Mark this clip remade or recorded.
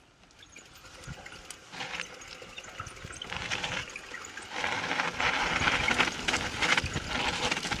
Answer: recorded